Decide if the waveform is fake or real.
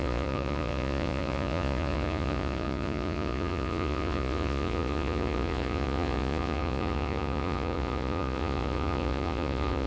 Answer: fake